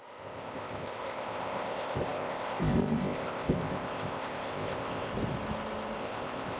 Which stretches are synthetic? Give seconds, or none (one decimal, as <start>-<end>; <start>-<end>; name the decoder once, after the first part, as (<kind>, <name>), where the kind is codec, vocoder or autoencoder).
0.0-5.1 (codec, ZipCodec); 6.0-6.6